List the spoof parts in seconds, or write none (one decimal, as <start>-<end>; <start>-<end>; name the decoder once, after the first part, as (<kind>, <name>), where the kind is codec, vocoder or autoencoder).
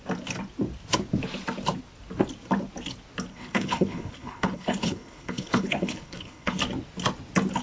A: 3.3-6.6 (codec, HILCodec)